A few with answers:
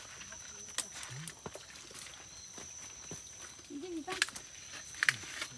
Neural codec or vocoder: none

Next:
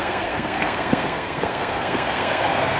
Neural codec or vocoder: codec, SNAC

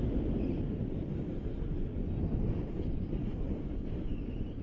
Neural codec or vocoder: none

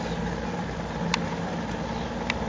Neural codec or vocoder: none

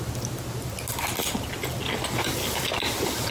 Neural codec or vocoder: none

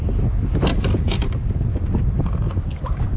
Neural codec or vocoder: none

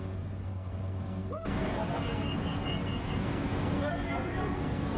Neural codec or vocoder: codec, SNAC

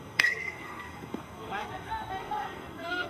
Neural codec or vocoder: codec, SNAC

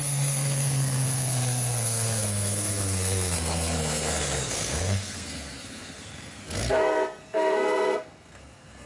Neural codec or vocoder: codec, SNAC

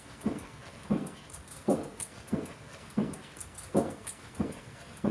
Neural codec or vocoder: codec, SNAC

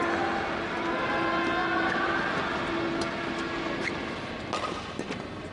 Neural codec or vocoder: none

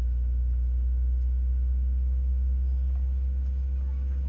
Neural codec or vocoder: none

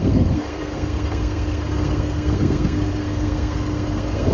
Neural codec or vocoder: codec, SNAC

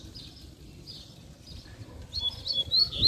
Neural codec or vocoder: none